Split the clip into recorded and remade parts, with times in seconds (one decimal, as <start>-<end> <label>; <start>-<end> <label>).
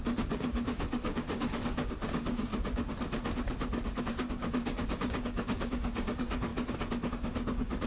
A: 0.0-2.5 remade; 2.5-4.0 recorded; 4.0-6.5 remade; 6.5-7.1 recorded; 7.1-7.9 remade